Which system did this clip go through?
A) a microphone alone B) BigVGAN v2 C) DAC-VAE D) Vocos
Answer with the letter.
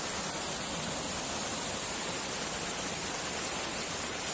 A